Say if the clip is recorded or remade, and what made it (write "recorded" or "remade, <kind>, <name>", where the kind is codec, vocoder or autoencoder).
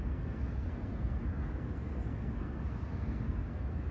remade, codec, SNAC